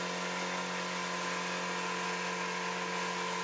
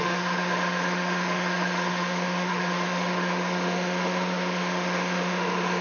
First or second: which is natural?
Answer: first